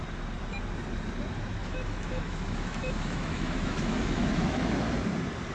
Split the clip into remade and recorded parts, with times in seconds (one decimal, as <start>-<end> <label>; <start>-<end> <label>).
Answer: 0.0-1.6 recorded; 1.6-4.8 remade; 4.8-5.5 recorded